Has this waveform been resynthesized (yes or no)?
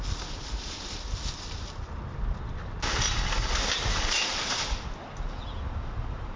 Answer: no